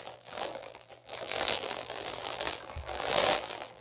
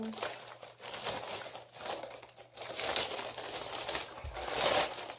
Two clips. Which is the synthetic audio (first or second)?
first